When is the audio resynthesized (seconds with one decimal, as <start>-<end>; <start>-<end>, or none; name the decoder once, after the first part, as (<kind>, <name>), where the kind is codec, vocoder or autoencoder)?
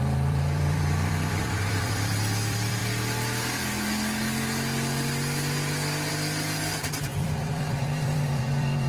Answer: 0.0-2.8 (vocoder, BigVGAN v2); 6.1-8.9